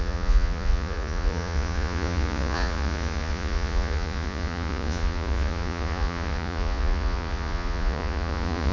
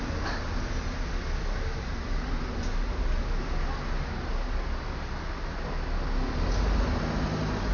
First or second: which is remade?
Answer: first